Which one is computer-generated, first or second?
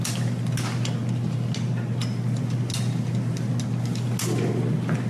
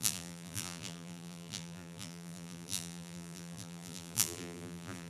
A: second